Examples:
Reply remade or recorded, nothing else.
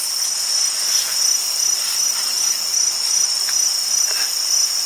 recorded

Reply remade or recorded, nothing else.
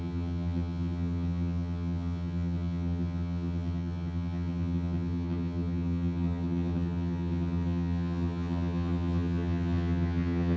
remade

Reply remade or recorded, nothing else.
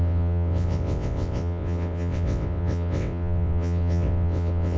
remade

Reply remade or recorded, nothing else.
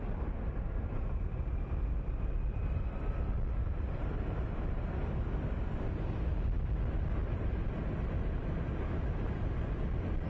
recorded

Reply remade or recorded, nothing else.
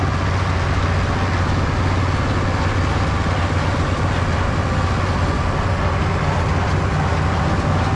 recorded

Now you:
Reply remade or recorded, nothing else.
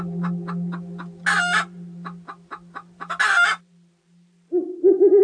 recorded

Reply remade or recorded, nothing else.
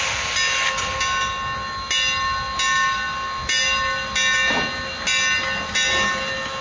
recorded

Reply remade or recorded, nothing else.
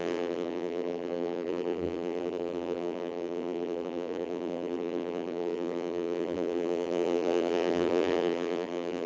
remade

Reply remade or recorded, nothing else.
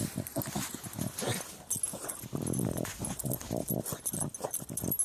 recorded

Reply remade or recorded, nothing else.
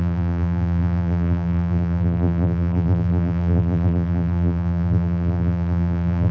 remade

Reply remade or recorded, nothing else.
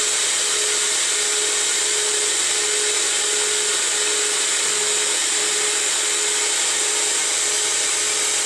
recorded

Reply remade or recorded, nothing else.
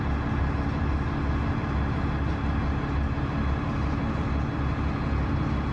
recorded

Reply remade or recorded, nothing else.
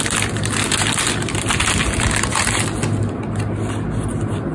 recorded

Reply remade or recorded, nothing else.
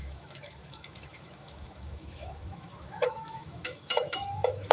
remade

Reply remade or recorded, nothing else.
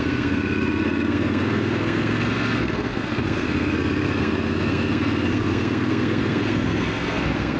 remade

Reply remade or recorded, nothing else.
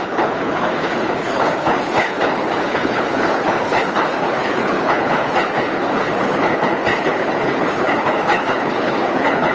remade